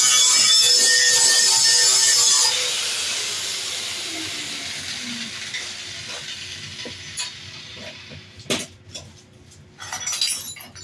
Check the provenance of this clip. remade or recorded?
recorded